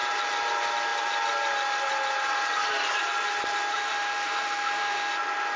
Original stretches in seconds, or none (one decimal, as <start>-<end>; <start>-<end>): 0.0-3.7; 5.1-5.6